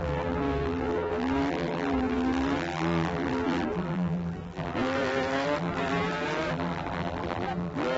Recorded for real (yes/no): no